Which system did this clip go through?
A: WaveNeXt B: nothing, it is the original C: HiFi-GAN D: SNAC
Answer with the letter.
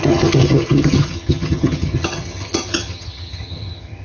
C